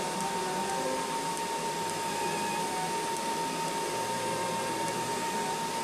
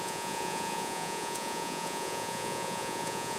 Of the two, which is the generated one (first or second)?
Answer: second